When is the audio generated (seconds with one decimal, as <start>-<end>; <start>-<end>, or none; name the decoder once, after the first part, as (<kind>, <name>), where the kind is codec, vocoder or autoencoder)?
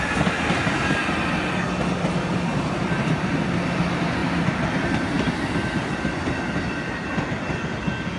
2.5-3.3 (vocoder, BigVGAN v2)